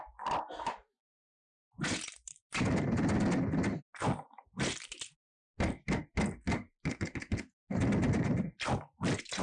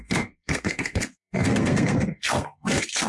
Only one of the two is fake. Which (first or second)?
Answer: second